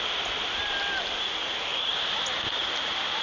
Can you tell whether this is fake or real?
real